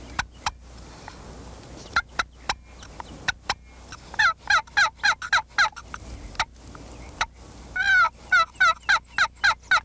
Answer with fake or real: real